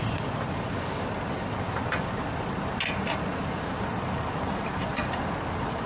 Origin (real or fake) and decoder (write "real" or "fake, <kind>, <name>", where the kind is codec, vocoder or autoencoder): real